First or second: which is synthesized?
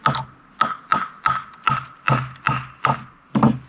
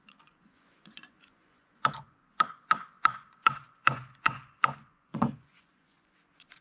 second